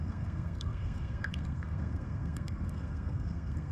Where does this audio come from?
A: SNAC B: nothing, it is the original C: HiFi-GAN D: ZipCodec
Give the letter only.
A